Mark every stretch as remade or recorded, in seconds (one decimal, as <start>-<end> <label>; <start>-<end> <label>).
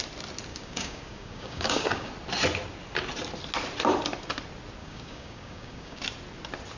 0.0-0.5 recorded; 0.5-2.1 remade; 2.1-4.8 recorded; 4.8-6.0 remade; 6.0-6.8 recorded